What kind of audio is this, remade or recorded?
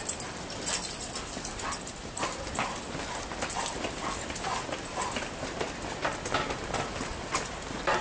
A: recorded